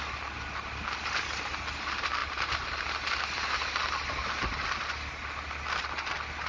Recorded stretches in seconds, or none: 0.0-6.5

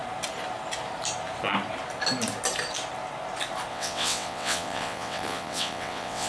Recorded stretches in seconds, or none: 0.0-3.7